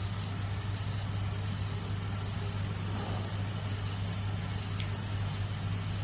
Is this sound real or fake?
real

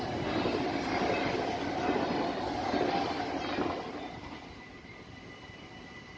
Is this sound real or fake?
real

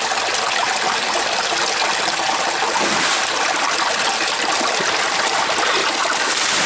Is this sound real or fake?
real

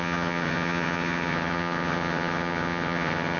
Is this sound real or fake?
fake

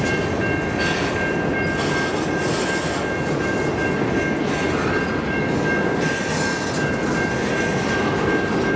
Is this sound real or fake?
real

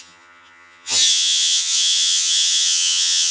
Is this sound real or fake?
fake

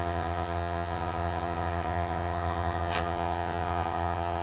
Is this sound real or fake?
fake